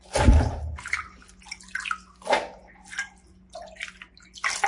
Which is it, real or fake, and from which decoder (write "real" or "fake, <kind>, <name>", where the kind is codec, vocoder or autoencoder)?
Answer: real